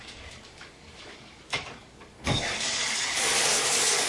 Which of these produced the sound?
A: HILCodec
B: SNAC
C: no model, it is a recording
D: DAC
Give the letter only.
D